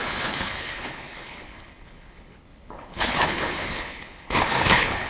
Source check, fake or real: fake